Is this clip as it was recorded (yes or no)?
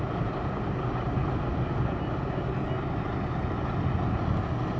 yes